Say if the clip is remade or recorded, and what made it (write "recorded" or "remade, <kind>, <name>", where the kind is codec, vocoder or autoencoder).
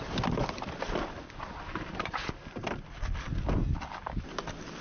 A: recorded